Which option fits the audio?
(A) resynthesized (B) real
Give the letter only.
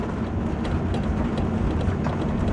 B